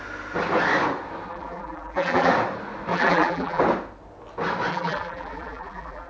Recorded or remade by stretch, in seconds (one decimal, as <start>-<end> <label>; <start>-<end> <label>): 0.0-1.3 recorded; 1.3-2.3 remade; 2.3-2.9 recorded; 2.9-3.6 remade; 3.6-4.7 recorded; 4.7-6.1 remade